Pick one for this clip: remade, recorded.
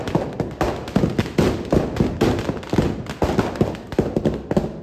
recorded